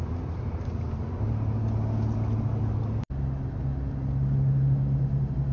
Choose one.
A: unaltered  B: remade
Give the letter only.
A